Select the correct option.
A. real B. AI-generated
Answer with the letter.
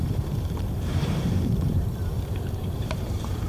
B